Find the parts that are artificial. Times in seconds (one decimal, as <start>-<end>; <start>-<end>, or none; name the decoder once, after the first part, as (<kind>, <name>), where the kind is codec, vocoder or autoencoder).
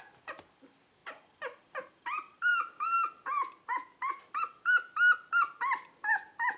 none